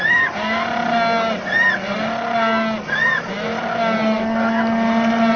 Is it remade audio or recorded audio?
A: recorded